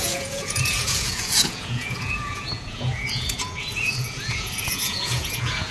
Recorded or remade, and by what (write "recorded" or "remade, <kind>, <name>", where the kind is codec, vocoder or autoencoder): remade, vocoder, Vocos